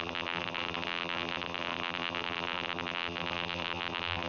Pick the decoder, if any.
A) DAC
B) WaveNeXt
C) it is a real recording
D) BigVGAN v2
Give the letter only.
D